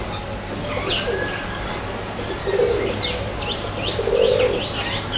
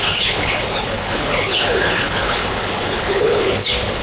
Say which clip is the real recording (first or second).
first